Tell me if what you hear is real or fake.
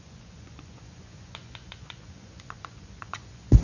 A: fake